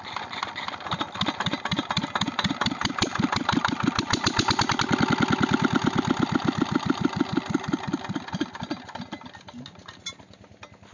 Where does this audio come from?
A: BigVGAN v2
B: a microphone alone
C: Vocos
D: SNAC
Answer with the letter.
B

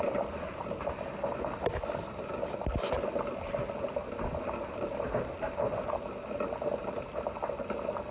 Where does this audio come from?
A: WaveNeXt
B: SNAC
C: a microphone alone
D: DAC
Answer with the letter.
C